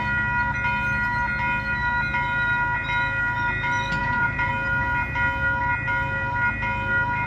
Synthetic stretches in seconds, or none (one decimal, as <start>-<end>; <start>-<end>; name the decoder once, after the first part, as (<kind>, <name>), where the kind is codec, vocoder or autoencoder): 4.0-4.5 (vocoder, Vocos)